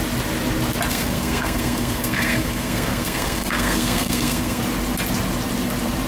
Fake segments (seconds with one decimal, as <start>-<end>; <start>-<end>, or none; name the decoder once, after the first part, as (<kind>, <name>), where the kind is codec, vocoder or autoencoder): 0.9-4.6 (codec, SNAC)